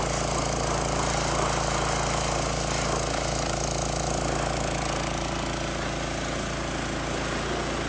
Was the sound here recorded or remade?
recorded